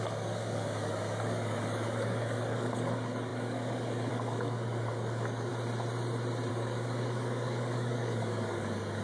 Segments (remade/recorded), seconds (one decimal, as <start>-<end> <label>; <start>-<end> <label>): 0.0-5.5 remade; 5.5-6.5 recorded; 6.5-9.0 remade